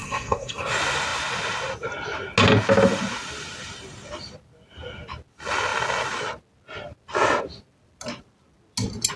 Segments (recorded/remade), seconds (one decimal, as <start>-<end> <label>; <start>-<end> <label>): 0.0-0.7 remade; 0.7-9.2 recorded

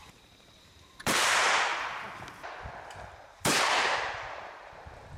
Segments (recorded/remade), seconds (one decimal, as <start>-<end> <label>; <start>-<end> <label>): 0.0-1.7 remade; 1.7-3.3 recorded; 3.3-5.2 remade

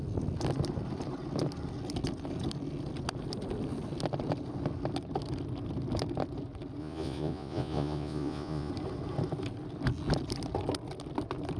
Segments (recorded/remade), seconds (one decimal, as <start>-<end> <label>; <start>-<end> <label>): 0.0-6.8 recorded; 6.8-8.7 remade; 8.7-11.6 recorded

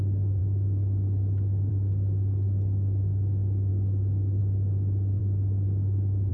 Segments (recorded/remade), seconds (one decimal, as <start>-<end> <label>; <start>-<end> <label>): 0.0-3.7 recorded; 3.7-4.4 remade; 4.4-6.3 recorded

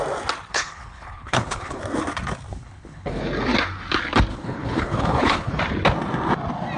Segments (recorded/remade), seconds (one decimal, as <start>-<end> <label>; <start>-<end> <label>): 0.0-0.5 recorded; 0.5-1.8 remade; 1.8-2.5 recorded; 2.5-3.2 remade; 3.2-4.3 recorded; 4.3-5.6 remade; 5.6-6.8 recorded

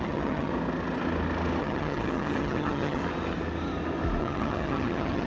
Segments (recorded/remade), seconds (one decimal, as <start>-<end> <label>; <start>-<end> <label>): 0.0-0.5 remade; 0.5-1.6 recorded; 1.6-3.0 remade; 3.0-4.2 recorded; 4.2-5.3 remade

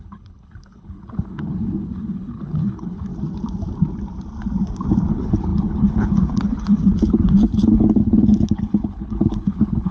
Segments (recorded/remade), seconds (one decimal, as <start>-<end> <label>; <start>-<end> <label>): 0.0-3.1 remade; 3.1-5.1 recorded; 5.1-9.9 remade